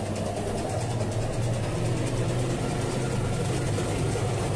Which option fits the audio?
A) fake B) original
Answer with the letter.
B